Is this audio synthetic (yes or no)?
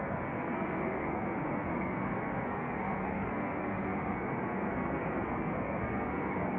yes